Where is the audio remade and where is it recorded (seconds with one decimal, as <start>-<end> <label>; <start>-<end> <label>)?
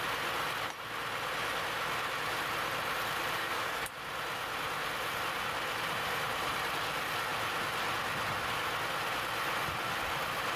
0.0-3.4 recorded; 3.4-3.9 remade; 3.9-10.6 recorded